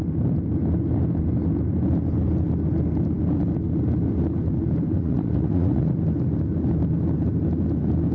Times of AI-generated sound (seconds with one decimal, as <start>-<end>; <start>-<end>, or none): 4.9-6.0

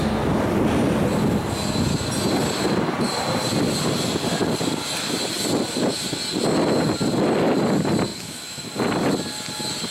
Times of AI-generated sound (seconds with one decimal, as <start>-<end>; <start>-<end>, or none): 8.1-8.7